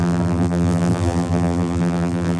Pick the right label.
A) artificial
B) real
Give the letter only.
A